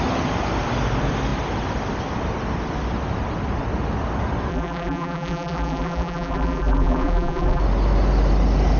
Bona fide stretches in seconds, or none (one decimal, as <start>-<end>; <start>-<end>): 0.0-4.5; 7.6-8.8